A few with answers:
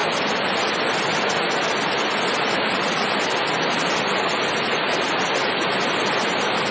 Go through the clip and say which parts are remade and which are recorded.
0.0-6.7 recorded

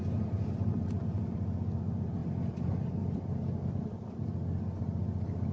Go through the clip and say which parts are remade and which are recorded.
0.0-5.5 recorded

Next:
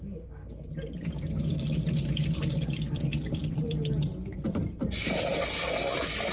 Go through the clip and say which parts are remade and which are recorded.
0.0-3.4 recorded; 3.4-5.3 remade; 5.3-6.3 recorded

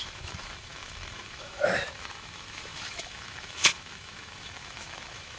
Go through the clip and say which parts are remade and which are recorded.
0.0-5.4 remade

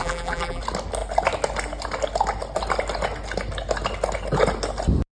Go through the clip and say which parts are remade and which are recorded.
0.0-0.6 remade; 0.6-5.2 recorded

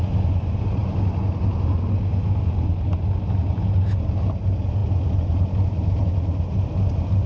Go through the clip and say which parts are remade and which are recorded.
0.0-7.3 recorded

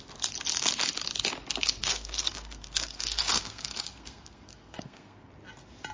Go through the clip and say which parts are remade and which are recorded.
0.0-1.8 recorded; 1.8-5.3 remade; 5.3-5.9 recorded

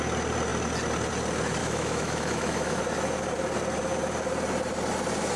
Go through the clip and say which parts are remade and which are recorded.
0.0-1.6 recorded; 1.6-2.8 remade; 2.8-5.4 recorded